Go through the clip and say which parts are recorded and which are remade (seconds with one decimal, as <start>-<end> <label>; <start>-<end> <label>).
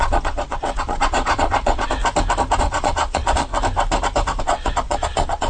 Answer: 0.0-2.0 remade; 2.0-2.6 recorded; 2.6-3.5 remade; 3.5-4.4 recorded; 4.4-5.5 remade